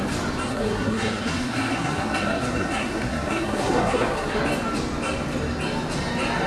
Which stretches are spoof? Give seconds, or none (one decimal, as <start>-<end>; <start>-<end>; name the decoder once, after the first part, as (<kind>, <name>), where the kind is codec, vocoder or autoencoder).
0.5-4.4 (codec, SNAC)